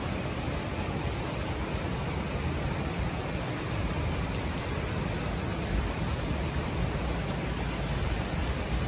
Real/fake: real